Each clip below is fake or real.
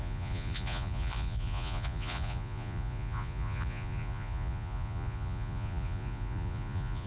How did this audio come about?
fake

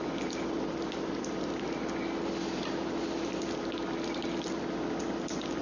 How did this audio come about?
real